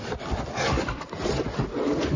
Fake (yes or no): no